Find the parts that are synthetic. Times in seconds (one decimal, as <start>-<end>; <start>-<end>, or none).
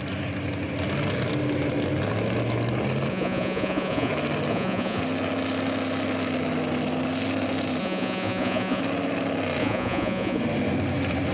3.1-4.1; 4.5-5.0; 7.8-8.8; 9.6-10.4